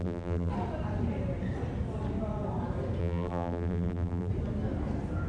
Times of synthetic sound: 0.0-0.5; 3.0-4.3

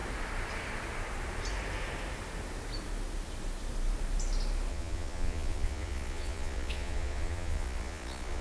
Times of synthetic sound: 4.7-8.4

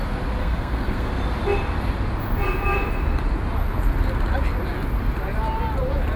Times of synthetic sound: 0.4-1.1

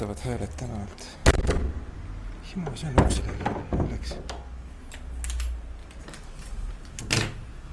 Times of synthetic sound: 5.8-7.0

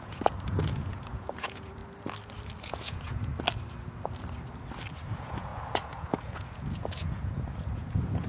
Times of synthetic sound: 0.0-1.8; 2.6-3.3; 5.1-8.3